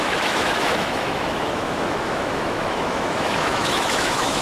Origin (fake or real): fake